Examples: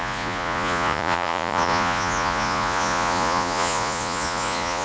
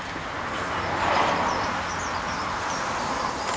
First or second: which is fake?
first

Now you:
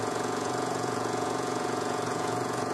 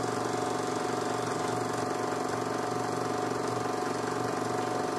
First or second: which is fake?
first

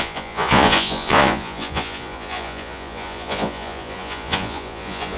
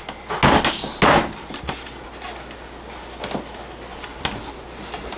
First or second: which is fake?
first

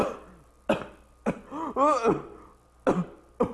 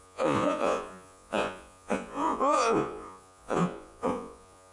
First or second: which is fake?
second